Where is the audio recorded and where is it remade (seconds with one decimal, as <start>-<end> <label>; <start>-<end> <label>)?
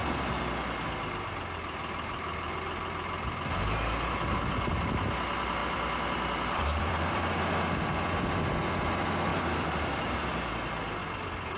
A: 0.0-5.6 recorded; 5.6-7.3 remade; 7.3-9.3 recorded; 9.3-10.5 remade; 10.5-11.0 recorded; 11.0-11.6 remade